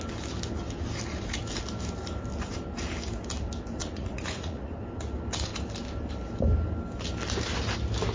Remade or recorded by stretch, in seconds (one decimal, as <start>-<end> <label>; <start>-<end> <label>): 0.0-3.8 recorded; 3.8-4.7 remade; 4.7-8.1 recorded